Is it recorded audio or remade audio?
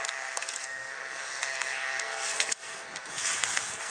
remade